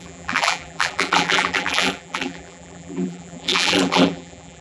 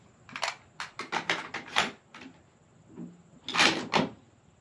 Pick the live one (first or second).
second